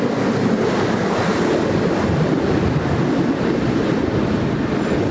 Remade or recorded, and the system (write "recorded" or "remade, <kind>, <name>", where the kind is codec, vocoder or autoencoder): recorded